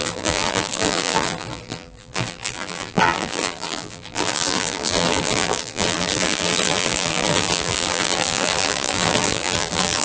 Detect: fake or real fake